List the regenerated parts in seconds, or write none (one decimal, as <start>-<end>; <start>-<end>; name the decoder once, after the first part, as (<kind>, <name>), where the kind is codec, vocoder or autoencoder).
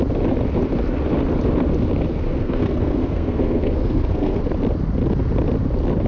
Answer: 2.1-4.4 (codec, SNAC)